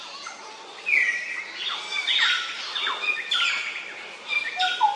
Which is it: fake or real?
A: real